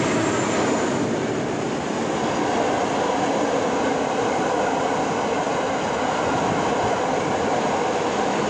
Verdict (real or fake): real